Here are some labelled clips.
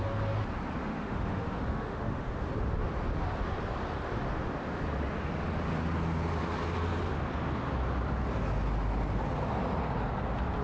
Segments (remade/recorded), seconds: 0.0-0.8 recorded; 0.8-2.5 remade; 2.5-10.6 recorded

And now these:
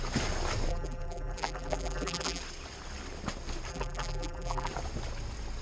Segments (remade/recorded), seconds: 0.0-0.7 recorded; 0.7-2.4 remade; 2.4-3.7 recorded; 3.7-4.7 remade; 4.7-5.6 recorded

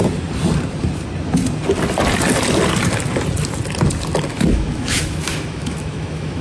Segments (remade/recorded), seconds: 0.0-4.3 recorded; 4.3-6.4 remade

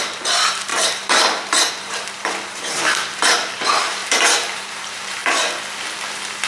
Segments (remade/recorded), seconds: 0.0-5.2 remade; 5.2-6.1 recorded; 6.1-6.5 remade